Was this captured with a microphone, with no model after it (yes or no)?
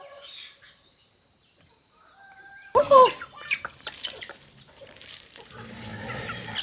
no